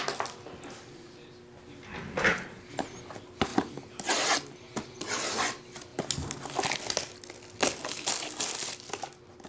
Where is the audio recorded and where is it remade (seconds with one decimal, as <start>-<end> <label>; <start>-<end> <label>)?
0.0-9.5 recorded